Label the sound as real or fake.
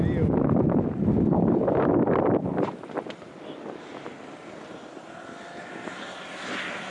real